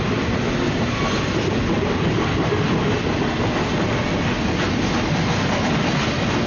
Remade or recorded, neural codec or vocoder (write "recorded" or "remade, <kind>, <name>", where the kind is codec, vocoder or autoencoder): recorded